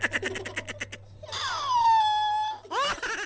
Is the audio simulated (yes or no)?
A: no